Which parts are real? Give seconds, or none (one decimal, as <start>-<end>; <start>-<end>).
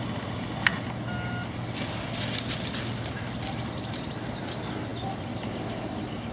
0.0-6.3